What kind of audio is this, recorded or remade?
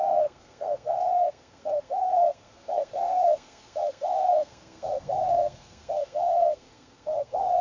remade